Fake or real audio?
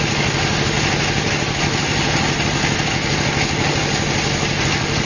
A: real